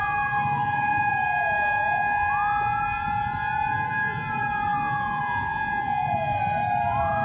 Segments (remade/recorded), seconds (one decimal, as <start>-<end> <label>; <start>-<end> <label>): 0.0-7.2 recorded